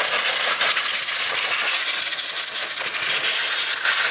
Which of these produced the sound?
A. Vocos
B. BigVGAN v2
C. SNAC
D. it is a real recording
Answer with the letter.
D